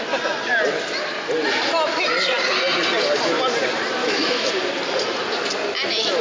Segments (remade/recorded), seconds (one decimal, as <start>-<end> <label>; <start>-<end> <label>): 0.0-4.0 recorded; 4.0-4.5 remade; 4.5-6.2 recorded

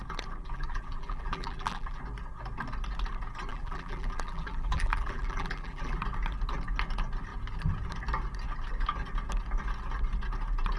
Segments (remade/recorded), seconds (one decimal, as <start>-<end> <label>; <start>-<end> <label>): 0.0-0.4 recorded; 0.4-2.0 remade; 2.0-3.5 recorded; 3.5-6.0 remade; 6.0-10.8 recorded

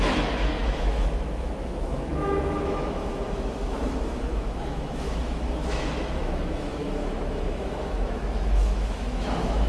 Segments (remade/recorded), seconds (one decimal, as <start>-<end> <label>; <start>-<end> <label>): 0.0-9.7 remade

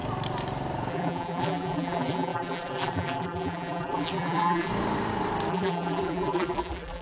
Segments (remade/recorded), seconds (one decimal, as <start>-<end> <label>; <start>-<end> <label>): 0.0-0.9 recorded; 0.9-4.7 remade; 4.7-5.5 recorded; 5.5-7.0 remade

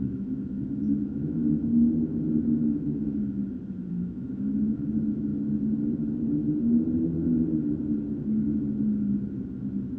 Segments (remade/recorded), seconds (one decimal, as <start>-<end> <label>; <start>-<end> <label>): 0.0-1.7 remade; 1.7-2.3 recorded; 2.3-3.4 remade; 3.4-3.9 recorded; 3.9-5.3 remade; 5.3-10.0 recorded

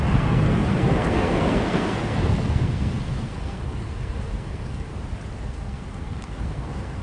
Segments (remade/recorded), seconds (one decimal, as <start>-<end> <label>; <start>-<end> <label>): 0.0-4.9 remade; 4.9-5.4 recorded; 5.4-7.0 remade

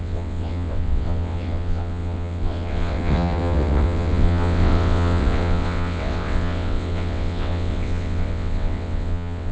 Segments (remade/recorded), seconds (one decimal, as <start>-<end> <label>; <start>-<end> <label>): 0.0-9.5 remade